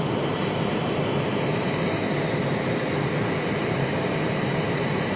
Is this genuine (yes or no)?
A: no